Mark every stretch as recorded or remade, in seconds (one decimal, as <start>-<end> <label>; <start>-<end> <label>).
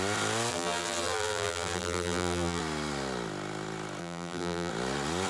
0.0-0.5 recorded; 0.5-2.6 remade; 2.6-4.0 recorded; 4.0-4.7 remade; 4.7-5.3 recorded